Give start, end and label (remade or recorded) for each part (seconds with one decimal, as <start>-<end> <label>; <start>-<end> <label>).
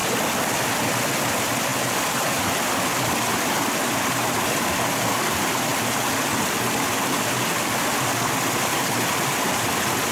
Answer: 0.0-10.1 recorded